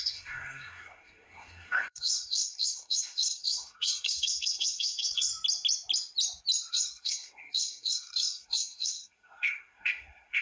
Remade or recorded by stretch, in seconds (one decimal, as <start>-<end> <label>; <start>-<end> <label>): 0.0-5.3 remade; 5.3-6.7 recorded; 6.7-10.4 remade